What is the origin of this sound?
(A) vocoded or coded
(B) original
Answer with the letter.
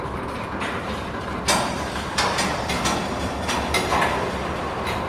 B